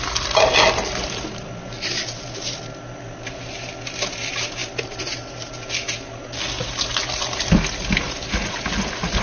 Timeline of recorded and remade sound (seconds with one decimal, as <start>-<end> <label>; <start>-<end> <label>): 0.0-9.2 recorded